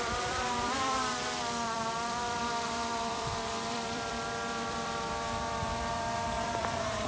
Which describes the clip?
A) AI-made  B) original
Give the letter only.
A